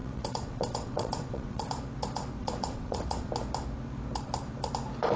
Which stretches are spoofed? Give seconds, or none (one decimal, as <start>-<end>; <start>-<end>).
0.0-1.7; 2.4-3.3